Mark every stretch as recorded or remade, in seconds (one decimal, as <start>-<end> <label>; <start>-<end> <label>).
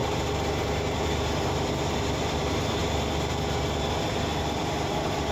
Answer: 0.0-2.8 remade; 2.8-4.0 recorded; 4.0-5.3 remade